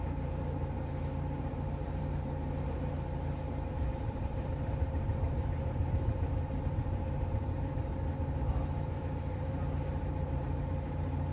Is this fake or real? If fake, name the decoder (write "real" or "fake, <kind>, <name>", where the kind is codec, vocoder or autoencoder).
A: fake, vocoder, BigVGAN v2